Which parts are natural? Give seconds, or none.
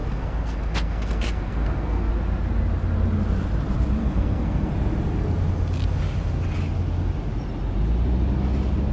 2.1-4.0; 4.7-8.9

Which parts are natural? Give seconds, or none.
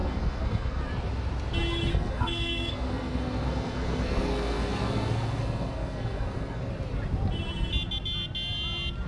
0.8-1.9; 6.7-9.1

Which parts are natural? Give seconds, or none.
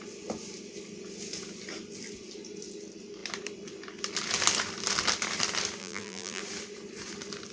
0.0-5.8; 6.4-7.5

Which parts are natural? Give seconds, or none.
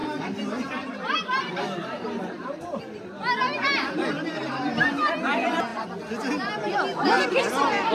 2.8-7.9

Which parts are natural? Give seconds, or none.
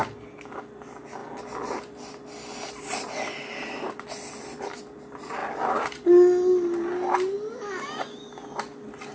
0.0-9.1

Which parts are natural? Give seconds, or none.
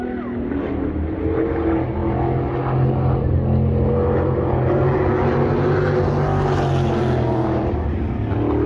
0.0-8.7